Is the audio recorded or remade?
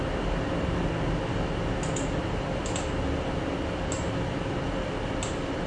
recorded